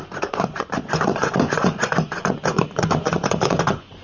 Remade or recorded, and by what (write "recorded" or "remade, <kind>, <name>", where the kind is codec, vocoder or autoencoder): remade, vocoder, Vocos